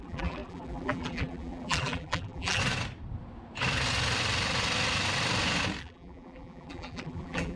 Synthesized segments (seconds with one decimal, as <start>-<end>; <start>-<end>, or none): 0.0-2.6; 5.8-7.6

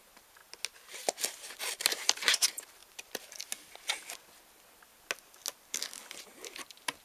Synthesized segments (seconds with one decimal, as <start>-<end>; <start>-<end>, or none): 0.0-0.4; 1.4-2.8; 6.1-7.0

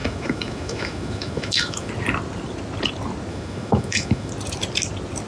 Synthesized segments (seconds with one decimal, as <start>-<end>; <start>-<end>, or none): 0.0-1.9; 3.3-4.3

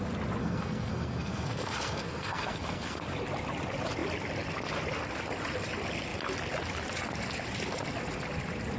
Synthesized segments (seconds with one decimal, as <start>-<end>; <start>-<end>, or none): 0.4-3.0

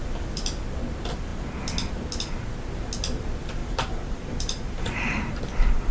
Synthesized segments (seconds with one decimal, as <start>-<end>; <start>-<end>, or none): 3.6-5.4

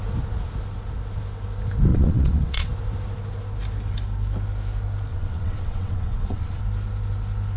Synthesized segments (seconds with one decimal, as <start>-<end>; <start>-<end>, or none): 1.9-2.7; 5.1-6.6